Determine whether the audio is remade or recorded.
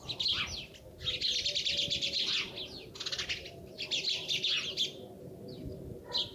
recorded